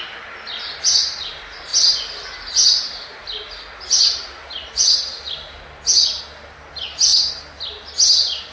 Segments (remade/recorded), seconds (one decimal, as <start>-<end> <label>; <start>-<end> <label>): 0.0-8.5 recorded